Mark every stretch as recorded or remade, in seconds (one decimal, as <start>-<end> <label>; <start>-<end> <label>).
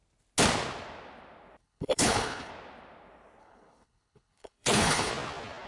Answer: 0.0-1.6 recorded; 1.6-2.5 remade; 2.5-3.4 recorded; 3.4-5.1 remade; 5.1-5.7 recorded